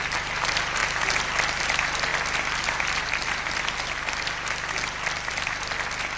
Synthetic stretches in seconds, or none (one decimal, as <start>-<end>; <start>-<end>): none